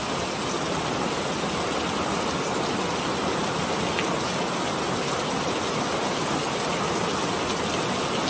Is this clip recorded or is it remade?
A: recorded